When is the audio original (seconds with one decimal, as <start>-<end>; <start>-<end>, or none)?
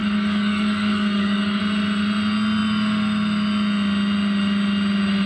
1.6-5.3